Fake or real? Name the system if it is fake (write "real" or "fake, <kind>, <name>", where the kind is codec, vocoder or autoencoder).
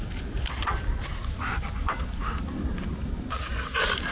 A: real